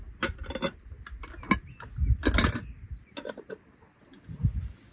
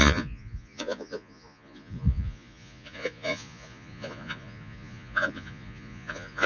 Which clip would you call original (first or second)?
first